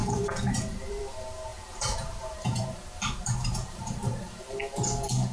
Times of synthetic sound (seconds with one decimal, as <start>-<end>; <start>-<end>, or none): 0.0-1.0; 1.5-4.3